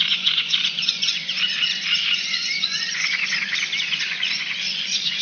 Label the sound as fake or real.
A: fake